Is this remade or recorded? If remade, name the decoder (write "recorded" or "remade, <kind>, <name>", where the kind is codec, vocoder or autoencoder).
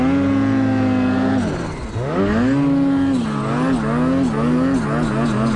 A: recorded